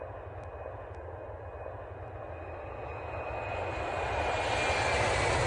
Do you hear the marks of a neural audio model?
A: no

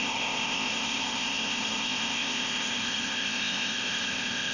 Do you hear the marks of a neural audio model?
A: yes